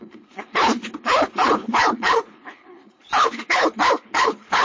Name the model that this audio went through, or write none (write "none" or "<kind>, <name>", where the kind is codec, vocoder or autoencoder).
codec, HILCodec